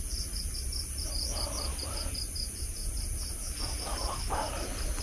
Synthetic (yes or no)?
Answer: no